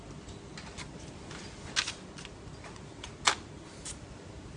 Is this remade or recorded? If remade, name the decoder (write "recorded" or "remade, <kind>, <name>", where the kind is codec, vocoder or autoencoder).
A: recorded